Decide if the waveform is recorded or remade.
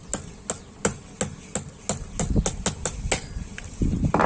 recorded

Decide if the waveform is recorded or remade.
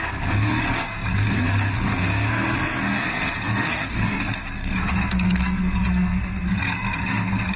remade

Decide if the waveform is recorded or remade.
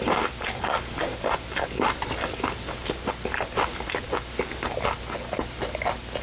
recorded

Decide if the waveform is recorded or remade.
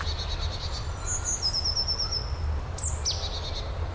recorded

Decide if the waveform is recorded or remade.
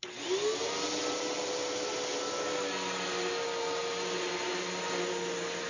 recorded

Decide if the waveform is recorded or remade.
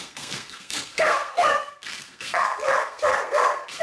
remade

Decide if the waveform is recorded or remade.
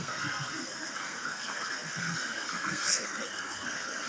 remade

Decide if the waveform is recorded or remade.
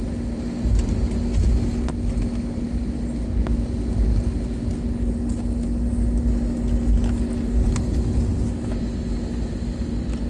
recorded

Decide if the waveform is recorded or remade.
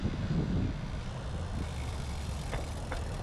recorded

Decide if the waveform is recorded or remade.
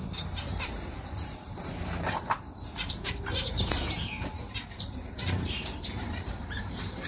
remade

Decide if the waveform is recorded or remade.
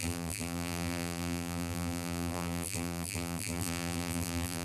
remade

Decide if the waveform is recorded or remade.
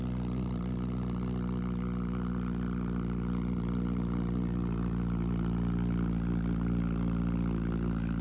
recorded